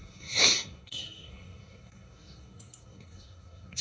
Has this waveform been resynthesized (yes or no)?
yes